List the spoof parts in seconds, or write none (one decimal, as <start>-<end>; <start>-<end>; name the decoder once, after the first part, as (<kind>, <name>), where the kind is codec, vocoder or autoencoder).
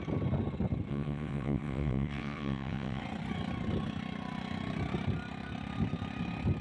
0.9-3.0 (vocoder, WaveNeXt)